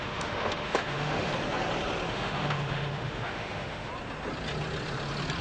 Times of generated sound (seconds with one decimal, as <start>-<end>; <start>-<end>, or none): 0.0-1.3; 2.1-3.9